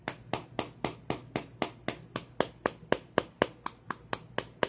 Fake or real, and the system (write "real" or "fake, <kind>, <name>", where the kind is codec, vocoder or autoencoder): real